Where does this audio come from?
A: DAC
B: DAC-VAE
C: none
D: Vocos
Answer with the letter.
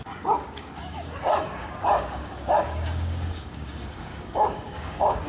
A